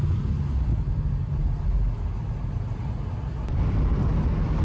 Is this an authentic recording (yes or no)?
yes